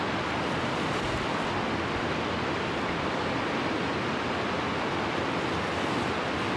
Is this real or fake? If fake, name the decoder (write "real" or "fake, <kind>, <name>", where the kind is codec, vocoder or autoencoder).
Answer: real